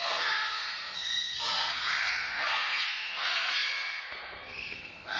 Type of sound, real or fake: fake